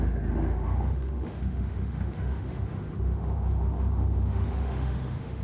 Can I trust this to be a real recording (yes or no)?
no